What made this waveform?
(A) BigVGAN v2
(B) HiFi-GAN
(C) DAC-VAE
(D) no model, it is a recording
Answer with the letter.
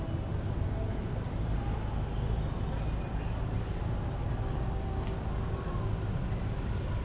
D